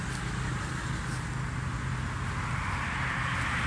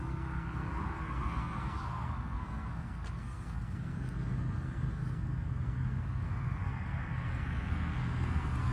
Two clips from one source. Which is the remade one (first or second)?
second